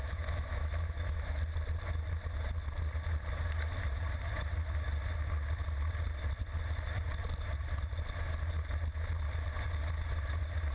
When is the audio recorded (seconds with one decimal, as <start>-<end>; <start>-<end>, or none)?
1.4-10.7